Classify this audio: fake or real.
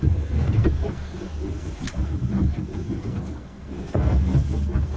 fake